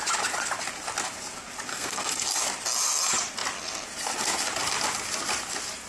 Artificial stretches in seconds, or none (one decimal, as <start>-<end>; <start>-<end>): 1.7-2.4